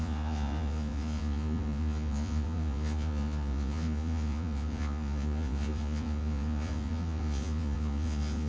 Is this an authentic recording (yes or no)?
no